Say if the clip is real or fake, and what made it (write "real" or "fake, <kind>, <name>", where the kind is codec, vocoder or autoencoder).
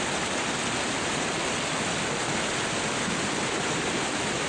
real